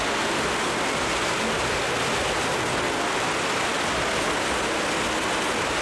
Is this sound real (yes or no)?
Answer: yes